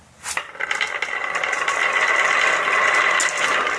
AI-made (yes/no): no